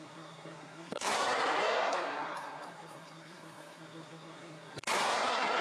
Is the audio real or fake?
fake